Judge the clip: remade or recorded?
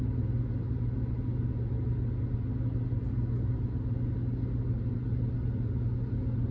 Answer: recorded